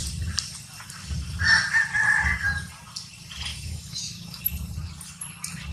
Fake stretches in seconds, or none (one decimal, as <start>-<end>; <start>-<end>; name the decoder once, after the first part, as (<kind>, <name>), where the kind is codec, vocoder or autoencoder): 3.5-4.4 (autoencoder, DAC-VAE)